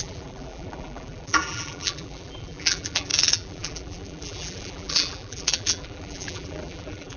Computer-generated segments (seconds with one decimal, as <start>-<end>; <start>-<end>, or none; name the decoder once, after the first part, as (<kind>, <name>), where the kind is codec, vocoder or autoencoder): 0.0-7.2 (vocoder, BigVGAN v2)